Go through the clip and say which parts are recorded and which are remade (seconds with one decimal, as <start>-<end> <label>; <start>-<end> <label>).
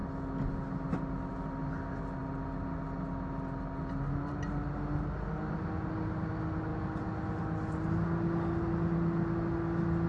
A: 0.0-10.1 recorded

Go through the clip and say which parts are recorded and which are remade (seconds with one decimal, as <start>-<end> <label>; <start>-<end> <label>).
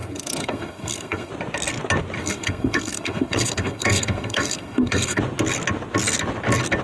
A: 0.0-1.3 remade; 1.3-2.2 recorded; 2.2-5.2 remade; 5.2-6.8 recorded